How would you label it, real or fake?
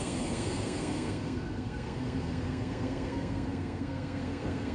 fake